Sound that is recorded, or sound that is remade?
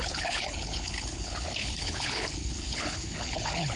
remade